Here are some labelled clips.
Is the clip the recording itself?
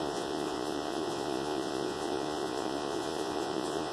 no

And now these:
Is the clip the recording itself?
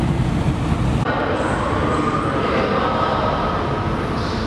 yes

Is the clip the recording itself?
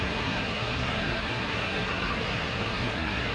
no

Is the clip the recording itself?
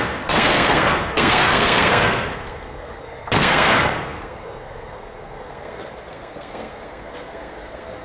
no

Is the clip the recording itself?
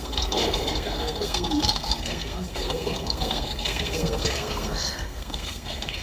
no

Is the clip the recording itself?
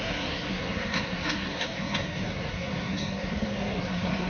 no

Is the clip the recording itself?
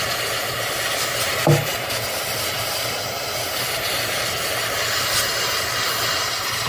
yes